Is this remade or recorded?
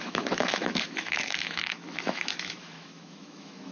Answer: remade